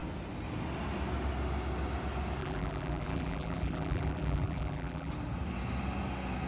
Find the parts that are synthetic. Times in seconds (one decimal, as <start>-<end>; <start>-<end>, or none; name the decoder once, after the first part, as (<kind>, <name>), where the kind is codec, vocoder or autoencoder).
2.4-5.1 (vocoder, BigVGAN v2)